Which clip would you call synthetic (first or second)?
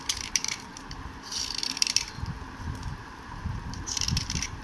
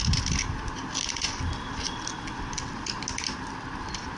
first